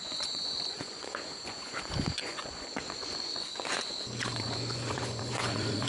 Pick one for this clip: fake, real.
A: fake